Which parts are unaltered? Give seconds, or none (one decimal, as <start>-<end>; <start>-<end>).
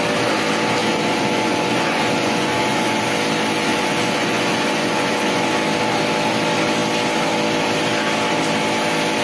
0.0-0.8; 3.0-3.7; 5.5-9.2